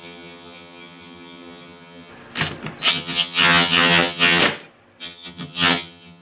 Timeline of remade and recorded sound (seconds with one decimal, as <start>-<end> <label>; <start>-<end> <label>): 0.0-2.1 remade; 2.1-2.9 recorded; 2.9-4.4 remade; 4.4-5.0 recorded; 5.0-6.2 remade

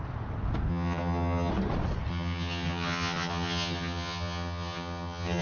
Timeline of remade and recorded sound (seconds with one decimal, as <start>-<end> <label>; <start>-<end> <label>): 0.0-0.7 recorded; 0.7-1.5 remade; 1.5-2.1 recorded; 2.1-5.4 remade

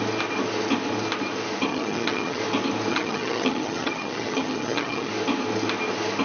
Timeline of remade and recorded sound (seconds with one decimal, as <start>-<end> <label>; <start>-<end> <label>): 0.0-1.7 recorded; 1.7-2.4 remade; 2.4-2.9 recorded; 2.9-5.1 remade; 5.1-6.2 recorded